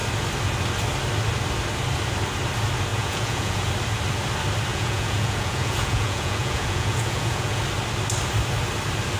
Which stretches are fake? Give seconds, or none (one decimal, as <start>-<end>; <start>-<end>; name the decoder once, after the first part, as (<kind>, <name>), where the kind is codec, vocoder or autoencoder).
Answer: 2.9-3.7 (vocoder, Vocos); 4.7-7.6